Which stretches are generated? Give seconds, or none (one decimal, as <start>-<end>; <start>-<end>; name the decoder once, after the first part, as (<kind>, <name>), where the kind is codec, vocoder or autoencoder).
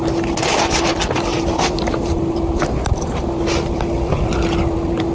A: 1.3-3.4 (vocoder, BigVGAN v2)